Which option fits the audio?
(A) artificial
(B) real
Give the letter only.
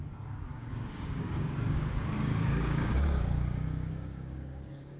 A